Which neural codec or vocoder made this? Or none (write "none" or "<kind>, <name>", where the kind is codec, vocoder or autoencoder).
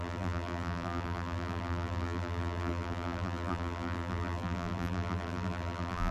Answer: vocoder, BigVGAN v2